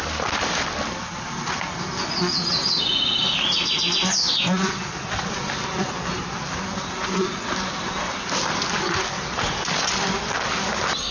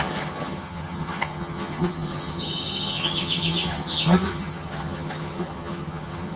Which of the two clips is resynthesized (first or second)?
second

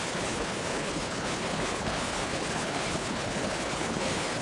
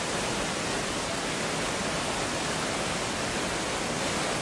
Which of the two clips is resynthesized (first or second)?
first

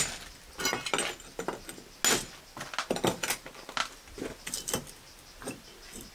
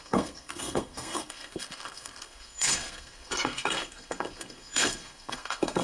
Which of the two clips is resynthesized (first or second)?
second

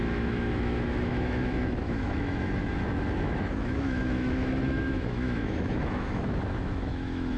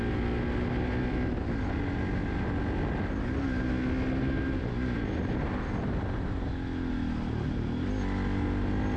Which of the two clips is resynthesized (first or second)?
first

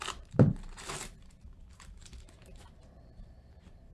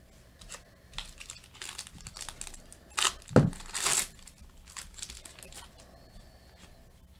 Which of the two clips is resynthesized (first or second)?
first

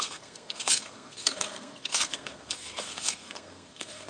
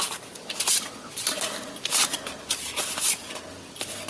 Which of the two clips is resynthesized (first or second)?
first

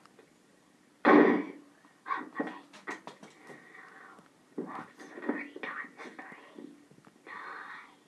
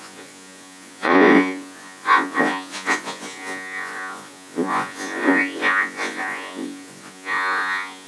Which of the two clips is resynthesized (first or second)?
second